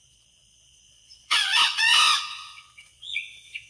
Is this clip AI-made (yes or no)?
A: yes